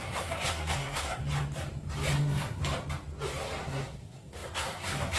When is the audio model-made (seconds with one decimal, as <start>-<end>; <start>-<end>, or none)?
0.0-1.2; 2.1-2.6; 3.6-5.2